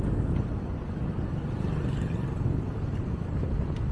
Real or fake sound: real